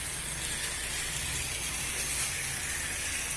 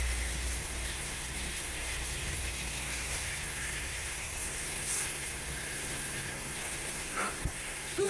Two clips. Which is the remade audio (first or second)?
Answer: second